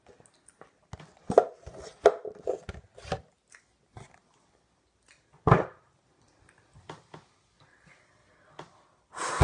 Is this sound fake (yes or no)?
no